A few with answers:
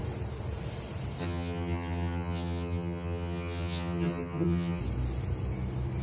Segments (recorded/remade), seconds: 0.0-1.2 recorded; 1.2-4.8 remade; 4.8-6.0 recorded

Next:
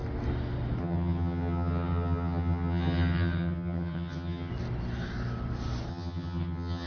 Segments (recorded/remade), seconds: 0.0-0.8 recorded; 0.8-4.5 remade; 4.5-5.9 recorded; 5.9-6.9 remade

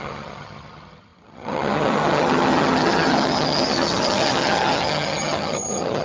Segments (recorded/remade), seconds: 0.0-6.0 remade

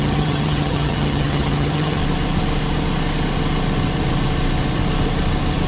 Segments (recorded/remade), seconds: 0.0-2.0 remade; 2.0-5.7 recorded

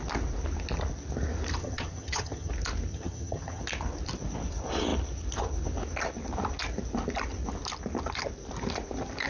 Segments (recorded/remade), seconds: 0.0-1.6 recorded; 1.6-2.5 remade; 2.5-2.9 recorded; 2.9-3.6 remade; 3.6-9.3 recorded